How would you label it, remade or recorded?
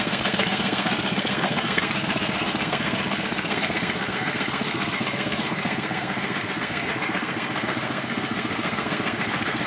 remade